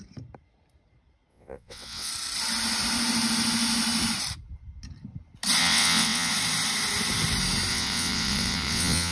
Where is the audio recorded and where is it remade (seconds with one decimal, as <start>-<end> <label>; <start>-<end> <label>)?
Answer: 0.0-1.3 recorded; 1.3-2.1 remade; 2.1-5.6 recorded; 5.6-6.3 remade; 6.3-7.7 recorded; 7.7-9.1 remade

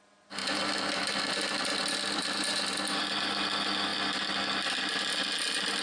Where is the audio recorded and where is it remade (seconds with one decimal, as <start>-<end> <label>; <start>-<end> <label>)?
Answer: 0.0-0.4 recorded; 0.4-1.2 remade; 1.2-1.8 recorded; 1.8-3.0 remade; 3.0-5.8 recorded